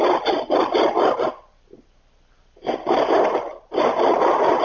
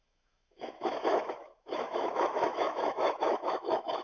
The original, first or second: first